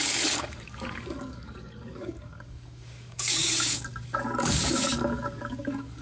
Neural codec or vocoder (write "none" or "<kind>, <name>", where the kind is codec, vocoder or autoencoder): codec, DAC